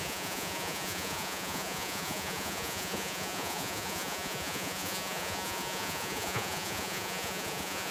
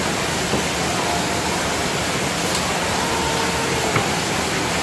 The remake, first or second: first